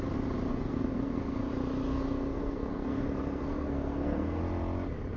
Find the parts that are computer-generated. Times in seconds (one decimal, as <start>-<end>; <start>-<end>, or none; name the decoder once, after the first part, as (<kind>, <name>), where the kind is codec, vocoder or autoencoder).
0.5-1.5 (codec, SNAC); 1.9-4.4